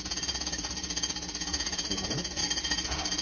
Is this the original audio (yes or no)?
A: no